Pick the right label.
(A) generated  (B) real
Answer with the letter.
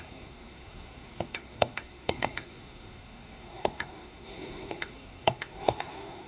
A